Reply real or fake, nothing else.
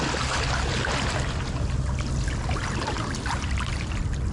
real